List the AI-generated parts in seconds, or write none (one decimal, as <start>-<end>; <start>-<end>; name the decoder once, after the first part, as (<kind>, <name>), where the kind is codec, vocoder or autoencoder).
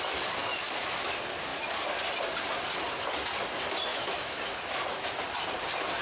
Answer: 0.4-1.1 (autoencoder, DAC-VAE); 3.9-5.2